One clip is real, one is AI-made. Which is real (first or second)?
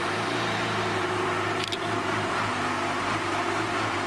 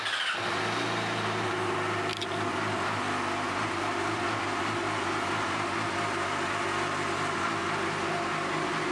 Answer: second